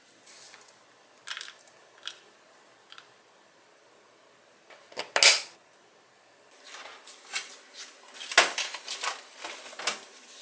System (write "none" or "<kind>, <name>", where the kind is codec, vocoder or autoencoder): none